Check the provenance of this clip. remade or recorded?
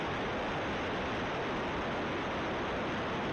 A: recorded